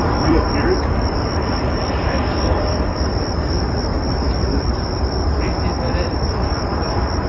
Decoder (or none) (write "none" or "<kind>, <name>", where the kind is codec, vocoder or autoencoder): vocoder, BigVGAN v2